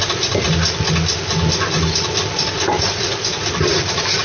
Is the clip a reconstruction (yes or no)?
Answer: no